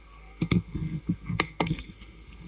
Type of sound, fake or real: fake